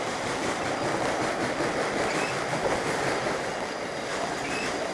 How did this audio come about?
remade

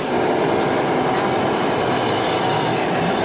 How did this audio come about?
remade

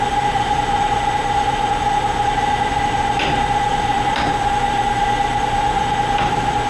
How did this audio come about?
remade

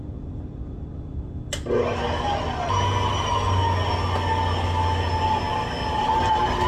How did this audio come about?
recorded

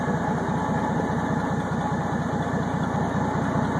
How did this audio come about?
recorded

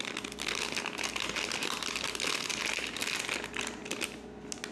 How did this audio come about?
recorded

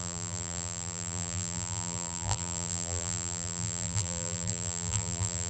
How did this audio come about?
remade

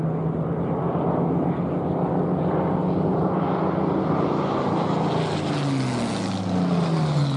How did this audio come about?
recorded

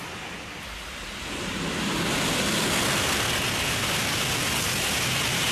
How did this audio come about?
recorded